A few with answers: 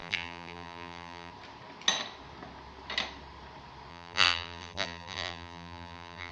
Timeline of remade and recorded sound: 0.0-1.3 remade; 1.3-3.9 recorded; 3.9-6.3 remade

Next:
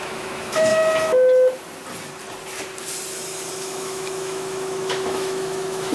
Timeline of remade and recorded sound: 0.0-0.7 remade; 0.7-3.5 recorded; 3.5-5.9 remade

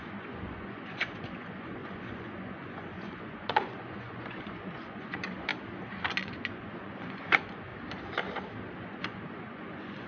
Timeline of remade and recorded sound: 0.0-5.5 remade; 5.5-6.2 recorded; 6.2-7.7 remade; 7.7-8.8 recorded; 8.8-10.1 remade

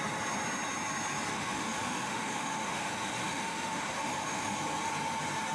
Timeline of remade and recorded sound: 0.0-1.3 recorded; 1.3-4.6 remade; 4.6-5.5 recorded

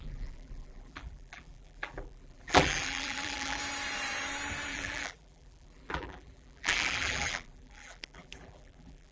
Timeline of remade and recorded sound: 0.0-3.6 remade; 3.6-4.7 recorded; 4.7-9.1 remade